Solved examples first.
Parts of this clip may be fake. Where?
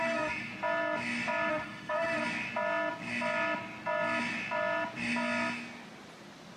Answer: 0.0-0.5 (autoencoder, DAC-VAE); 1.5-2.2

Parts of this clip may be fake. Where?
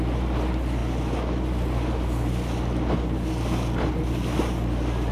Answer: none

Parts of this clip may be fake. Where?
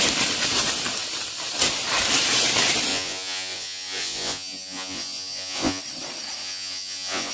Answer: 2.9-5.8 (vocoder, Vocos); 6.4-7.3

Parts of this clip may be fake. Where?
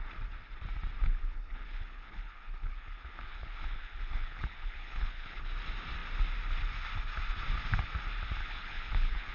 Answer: 1.0-5.5 (codec, HILCodec); 8.4-9.3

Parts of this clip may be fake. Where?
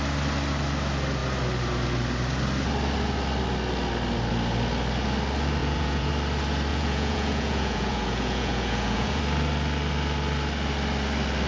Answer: 5.6-6.1 (vocoder, Vocos); 6.7-9.2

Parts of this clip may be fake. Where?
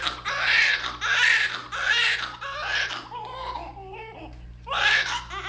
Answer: none